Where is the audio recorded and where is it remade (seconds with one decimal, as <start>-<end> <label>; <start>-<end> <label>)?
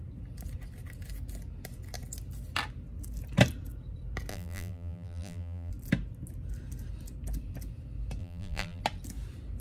0.0-4.3 recorded; 4.3-5.7 remade; 5.7-8.2 recorded; 8.2-8.8 remade; 8.8-9.6 recorded